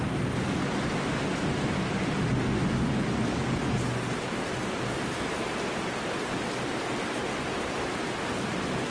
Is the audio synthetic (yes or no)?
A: no